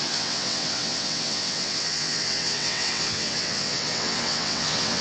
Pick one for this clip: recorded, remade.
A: remade